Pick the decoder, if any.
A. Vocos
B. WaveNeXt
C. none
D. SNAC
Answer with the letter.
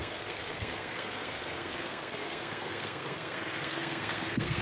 D